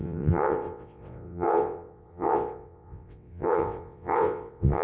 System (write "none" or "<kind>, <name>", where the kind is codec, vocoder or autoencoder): vocoder, WaveNeXt